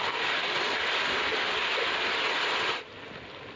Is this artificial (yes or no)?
no